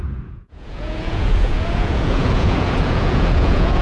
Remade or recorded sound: remade